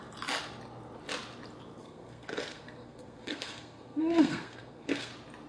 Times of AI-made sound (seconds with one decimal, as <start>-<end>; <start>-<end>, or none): 1.8-5.1